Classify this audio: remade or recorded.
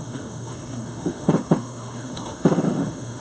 remade